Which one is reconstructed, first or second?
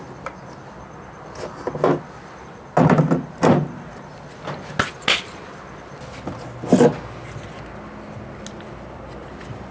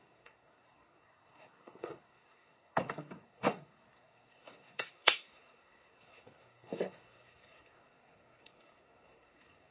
second